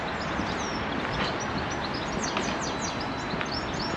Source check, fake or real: real